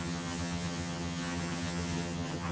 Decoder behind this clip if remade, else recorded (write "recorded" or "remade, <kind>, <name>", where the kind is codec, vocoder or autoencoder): remade, vocoder, HiFi-GAN